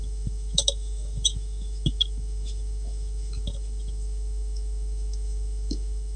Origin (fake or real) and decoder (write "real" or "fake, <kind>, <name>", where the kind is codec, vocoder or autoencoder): fake, autoencoder, DAC-VAE